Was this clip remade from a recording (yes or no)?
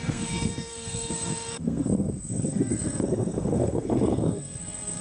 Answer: yes